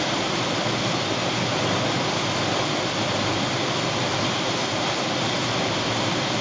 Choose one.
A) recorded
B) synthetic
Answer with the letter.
A